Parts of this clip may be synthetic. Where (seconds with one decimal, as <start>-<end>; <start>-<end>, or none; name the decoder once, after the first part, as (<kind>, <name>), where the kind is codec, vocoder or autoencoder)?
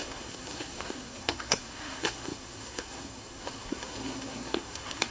0.0-5.1 (codec, SNAC)